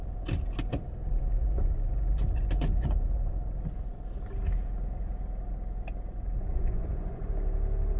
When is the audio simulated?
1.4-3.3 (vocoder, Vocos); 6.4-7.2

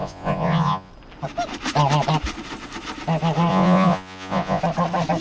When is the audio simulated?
0.0-0.9 (vocoder, Vocos); 3.5-4.6